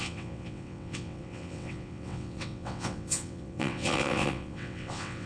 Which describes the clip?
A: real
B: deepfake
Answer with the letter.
B